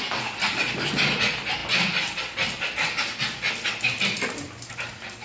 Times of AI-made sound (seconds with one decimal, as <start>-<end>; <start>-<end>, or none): none